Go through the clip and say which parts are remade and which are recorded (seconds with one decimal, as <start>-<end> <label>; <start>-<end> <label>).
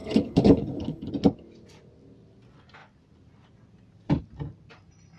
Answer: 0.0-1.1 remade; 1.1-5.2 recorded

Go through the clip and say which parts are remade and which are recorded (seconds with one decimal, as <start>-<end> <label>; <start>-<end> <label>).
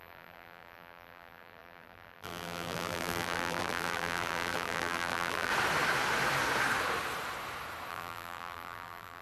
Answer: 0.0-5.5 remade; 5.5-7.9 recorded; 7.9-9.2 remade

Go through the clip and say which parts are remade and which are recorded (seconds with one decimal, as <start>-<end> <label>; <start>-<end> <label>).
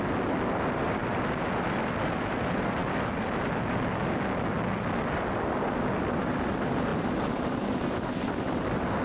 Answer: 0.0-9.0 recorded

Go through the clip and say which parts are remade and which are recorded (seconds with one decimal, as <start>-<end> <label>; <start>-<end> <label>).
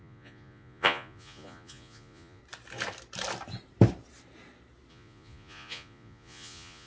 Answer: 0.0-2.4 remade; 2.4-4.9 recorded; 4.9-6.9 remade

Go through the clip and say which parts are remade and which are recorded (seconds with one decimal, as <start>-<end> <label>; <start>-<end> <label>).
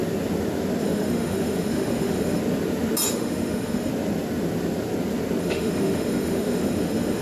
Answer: 0.0-0.8 recorded; 0.8-2.4 remade; 2.4-3.1 recorded; 3.1-3.9 remade; 3.9-5.4 recorded; 5.4-7.2 remade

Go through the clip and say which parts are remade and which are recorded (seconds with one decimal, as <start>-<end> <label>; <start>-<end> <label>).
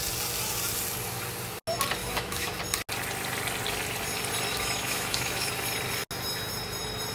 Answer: 0.0-2.0 recorded; 2.0-2.6 remade; 2.6-4.5 recorded; 4.5-5.5 remade; 5.5-7.1 recorded